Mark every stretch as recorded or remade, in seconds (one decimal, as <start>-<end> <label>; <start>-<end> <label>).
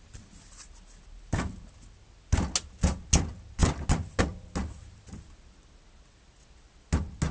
0.0-7.3 recorded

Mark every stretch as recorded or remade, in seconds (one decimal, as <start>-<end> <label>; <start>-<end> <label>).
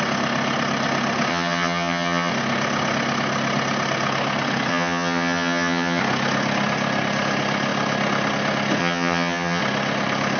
0.0-1.3 recorded; 1.3-2.3 remade; 2.3-4.7 recorded; 4.7-6.0 remade; 6.0-8.8 recorded; 8.8-9.6 remade; 9.6-10.4 recorded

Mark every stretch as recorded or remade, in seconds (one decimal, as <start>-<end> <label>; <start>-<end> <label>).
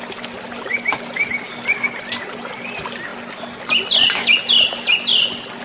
0.0-5.6 recorded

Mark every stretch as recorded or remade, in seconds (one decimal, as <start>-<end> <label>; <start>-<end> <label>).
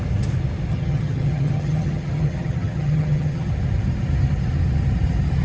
0.0-0.7 recorded; 0.7-3.5 remade; 3.5-5.4 recorded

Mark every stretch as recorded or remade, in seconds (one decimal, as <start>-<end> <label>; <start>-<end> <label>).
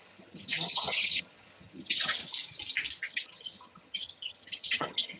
0.0-2.2 remade; 2.2-3.0 recorded; 3.0-5.2 remade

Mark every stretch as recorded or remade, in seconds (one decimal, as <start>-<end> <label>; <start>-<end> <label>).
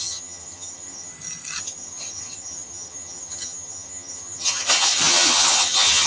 0.0-1.1 remade; 1.1-1.6 recorded; 1.6-6.1 remade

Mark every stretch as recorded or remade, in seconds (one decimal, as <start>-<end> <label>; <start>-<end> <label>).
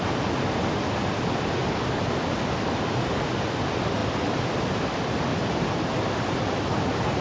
0.0-7.2 recorded